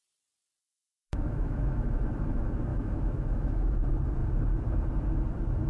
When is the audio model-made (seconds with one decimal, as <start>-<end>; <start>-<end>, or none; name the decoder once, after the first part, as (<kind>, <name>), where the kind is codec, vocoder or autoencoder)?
0.6-2.0 (autoencoder, DAC-VAE); 2.7-3.7

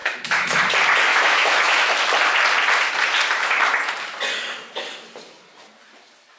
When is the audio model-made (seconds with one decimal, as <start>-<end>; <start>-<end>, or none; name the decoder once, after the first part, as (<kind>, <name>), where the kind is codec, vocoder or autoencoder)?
0.0-0.6 (autoencoder, DAC-VAE); 1.1-1.9

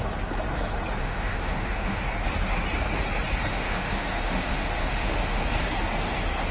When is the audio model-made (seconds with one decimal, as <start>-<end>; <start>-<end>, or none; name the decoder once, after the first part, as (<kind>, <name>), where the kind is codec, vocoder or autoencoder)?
1.0-2.0 (autoencoder, DAC-VAE); 3.5-5.5